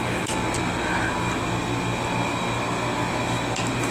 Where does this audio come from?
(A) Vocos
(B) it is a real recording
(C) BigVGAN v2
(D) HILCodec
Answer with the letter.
B